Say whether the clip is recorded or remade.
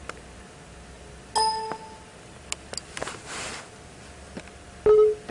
recorded